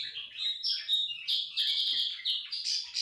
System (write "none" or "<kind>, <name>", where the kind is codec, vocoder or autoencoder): none